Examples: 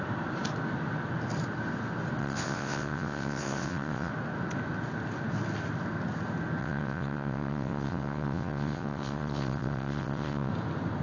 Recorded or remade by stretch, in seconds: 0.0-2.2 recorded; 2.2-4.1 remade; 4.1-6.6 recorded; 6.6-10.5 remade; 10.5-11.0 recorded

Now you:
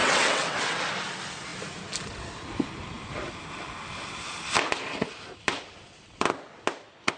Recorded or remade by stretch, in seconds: 0.0-0.6 remade; 0.6-7.2 recorded

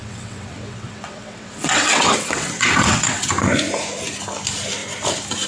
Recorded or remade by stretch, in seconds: 0.0-3.3 remade; 3.3-5.5 recorded

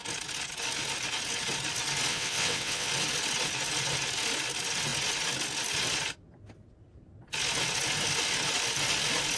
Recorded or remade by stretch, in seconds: 0.0-2.1 recorded; 2.1-2.9 remade; 2.9-9.4 recorded

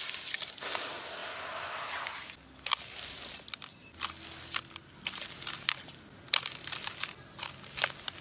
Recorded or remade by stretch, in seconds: 0.0-8.2 recorded